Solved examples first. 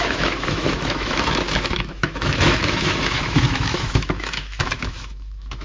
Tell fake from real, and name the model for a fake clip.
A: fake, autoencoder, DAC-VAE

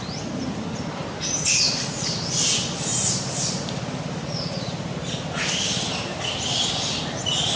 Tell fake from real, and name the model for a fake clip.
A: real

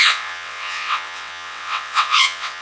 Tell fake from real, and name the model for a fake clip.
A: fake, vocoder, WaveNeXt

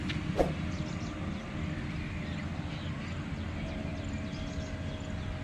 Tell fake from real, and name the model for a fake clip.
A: real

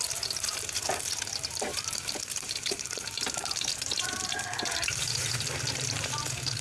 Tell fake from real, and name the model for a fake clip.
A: fake, vocoder, BigVGAN v2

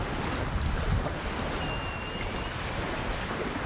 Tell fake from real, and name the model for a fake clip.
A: real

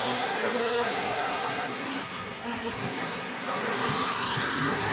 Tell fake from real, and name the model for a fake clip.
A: fake, codec, SNAC